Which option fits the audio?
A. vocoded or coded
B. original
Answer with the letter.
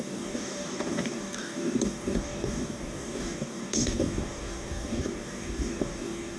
A